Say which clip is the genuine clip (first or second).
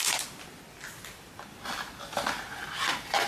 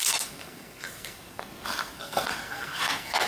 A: first